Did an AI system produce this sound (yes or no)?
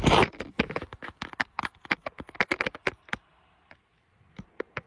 no